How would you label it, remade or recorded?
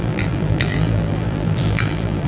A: remade